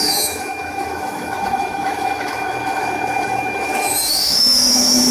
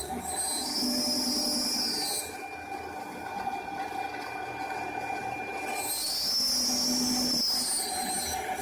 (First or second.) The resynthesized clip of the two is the first